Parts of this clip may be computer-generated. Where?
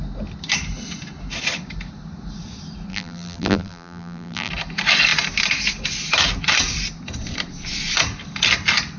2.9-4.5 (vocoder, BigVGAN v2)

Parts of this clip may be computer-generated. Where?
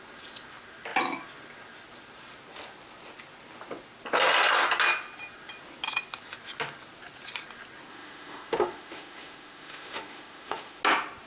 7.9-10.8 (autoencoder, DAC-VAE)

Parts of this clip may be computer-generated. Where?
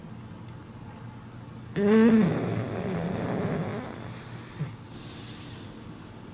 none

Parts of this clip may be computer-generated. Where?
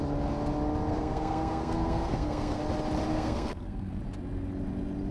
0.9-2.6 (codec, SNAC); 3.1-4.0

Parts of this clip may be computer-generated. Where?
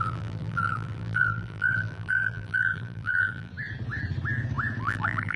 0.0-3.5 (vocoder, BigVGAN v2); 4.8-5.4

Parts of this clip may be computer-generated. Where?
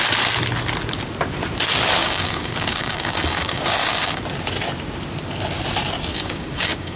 2.0-4.2 (codec, DAC); 6.1-7.0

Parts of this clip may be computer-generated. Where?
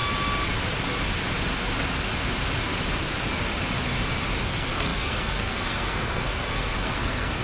4.4-7.4 (codec, SNAC)